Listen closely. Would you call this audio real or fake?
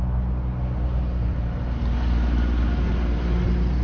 real